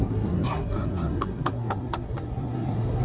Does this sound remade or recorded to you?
remade